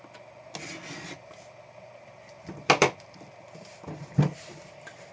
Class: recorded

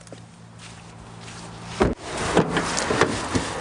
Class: recorded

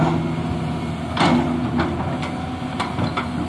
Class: recorded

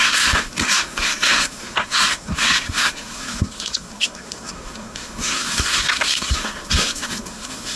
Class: remade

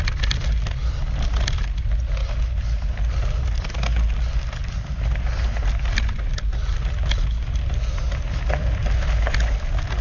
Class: recorded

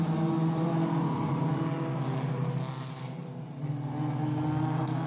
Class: recorded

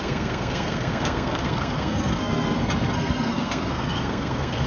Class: remade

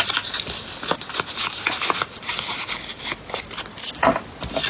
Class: recorded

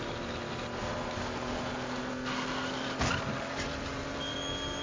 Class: recorded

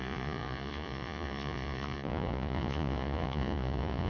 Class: remade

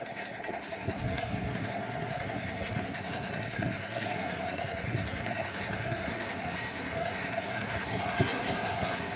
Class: remade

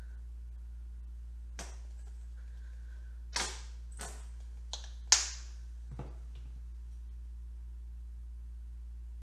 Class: recorded